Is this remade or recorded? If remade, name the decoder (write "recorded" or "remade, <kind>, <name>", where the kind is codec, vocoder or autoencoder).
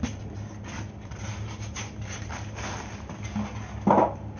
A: recorded